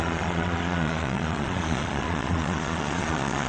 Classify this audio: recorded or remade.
remade